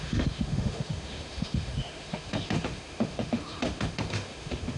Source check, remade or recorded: remade